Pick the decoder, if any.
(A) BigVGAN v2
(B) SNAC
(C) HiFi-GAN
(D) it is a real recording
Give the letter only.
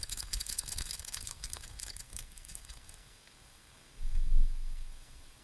B